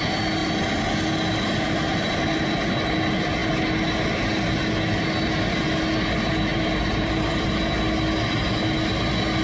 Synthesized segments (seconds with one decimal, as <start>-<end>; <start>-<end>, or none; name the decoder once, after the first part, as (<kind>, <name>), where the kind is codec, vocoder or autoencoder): 6.5-7.5 (vocoder, BigVGAN v2)